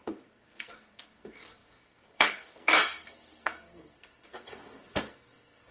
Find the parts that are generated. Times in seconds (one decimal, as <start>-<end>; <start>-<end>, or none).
0.0-5.7